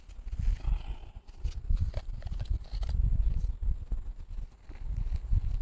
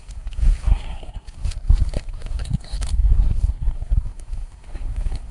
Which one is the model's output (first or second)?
second